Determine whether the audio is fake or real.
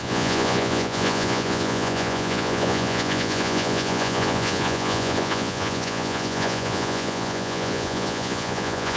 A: fake